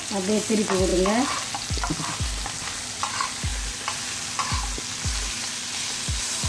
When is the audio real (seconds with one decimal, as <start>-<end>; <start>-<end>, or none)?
0.0-6.5